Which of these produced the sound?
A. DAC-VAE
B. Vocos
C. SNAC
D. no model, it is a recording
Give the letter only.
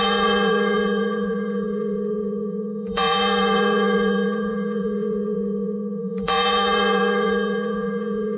B